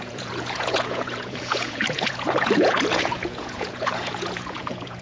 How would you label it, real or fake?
fake